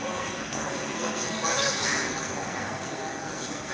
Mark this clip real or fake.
fake